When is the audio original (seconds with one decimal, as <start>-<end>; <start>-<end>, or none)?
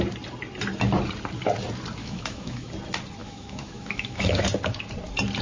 0.0-2.0; 2.7-3.2; 4.4-5.4